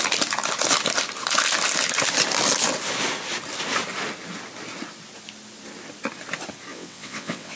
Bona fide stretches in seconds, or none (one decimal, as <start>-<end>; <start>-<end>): 0.0-6.7